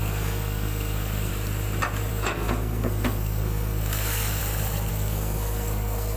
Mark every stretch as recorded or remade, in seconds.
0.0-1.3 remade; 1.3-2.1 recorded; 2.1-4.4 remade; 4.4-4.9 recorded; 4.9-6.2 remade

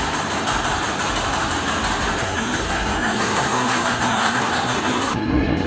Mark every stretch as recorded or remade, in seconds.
0.0-2.2 recorded; 2.2-5.7 remade

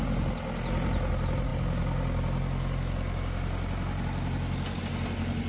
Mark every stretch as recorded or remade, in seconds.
0.0-5.5 recorded